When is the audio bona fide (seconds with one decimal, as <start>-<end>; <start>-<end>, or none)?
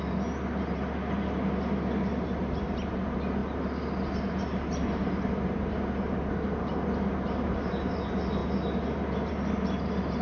0.0-10.2